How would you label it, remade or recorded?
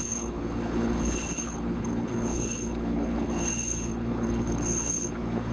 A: remade